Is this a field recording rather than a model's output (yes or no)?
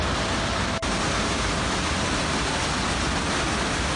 yes